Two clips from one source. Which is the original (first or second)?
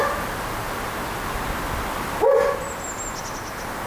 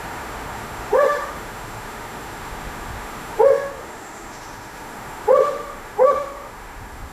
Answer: first